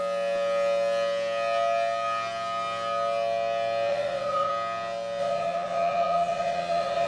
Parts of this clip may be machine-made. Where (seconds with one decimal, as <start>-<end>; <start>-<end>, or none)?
3.9-4.5; 5.2-7.1